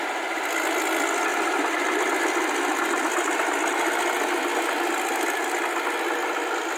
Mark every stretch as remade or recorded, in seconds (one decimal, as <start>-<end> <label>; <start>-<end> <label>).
0.0-6.8 recorded